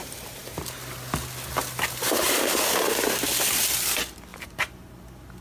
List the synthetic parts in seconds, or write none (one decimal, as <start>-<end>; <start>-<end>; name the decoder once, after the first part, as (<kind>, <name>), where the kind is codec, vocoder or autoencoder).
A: 4.3-4.9 (vocoder, BigVGAN v2)